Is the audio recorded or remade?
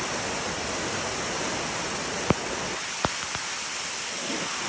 recorded